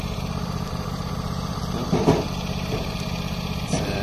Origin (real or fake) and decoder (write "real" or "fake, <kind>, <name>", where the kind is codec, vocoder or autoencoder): fake, vocoder, BigVGAN v2